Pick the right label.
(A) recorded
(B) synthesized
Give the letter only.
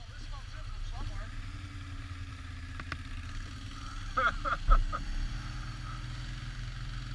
A